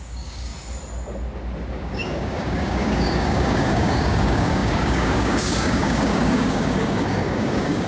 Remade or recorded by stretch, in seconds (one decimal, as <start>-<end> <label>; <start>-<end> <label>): 0.0-0.5 remade; 0.5-1.7 recorded; 1.7-7.9 remade

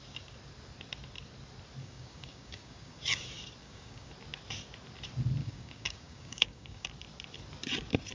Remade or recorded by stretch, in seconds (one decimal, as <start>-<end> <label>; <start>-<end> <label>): 0.0-1.8 recorded; 1.8-3.0 remade; 3.0-3.6 recorded; 3.6-4.1 remade; 4.1-5.4 recorded; 5.4-6.9 remade; 6.9-8.1 recorded

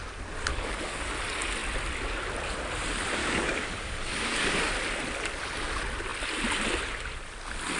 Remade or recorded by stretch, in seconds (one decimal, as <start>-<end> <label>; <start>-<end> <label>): 0.0-0.5 recorded; 0.5-1.1 remade; 1.1-3.2 recorded; 3.2-4.7 remade; 4.7-7.8 recorded

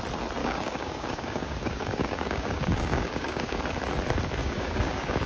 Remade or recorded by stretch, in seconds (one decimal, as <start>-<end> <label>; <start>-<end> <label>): 0.0-0.4 recorded; 0.4-3.6 remade; 3.6-4.4 recorded; 4.4-5.3 remade